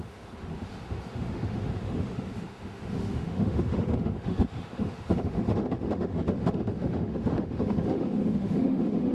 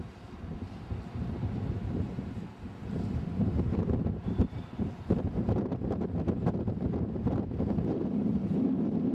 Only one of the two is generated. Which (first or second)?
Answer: first